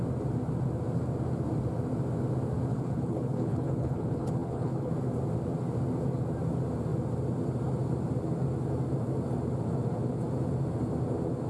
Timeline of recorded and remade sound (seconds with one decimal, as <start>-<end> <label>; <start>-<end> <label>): 0.0-2.7 recorded; 2.7-4.9 remade; 4.9-11.5 recorded